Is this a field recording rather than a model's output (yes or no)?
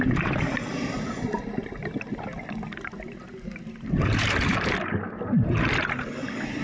yes